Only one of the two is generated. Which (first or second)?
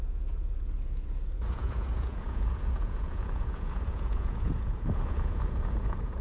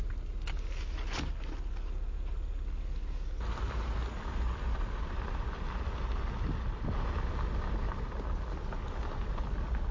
first